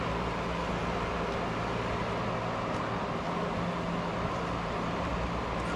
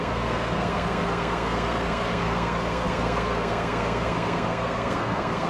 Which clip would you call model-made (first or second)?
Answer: second